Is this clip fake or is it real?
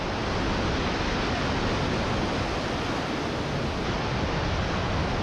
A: real